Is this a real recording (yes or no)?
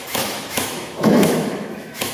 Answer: no